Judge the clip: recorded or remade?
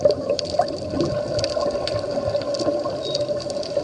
recorded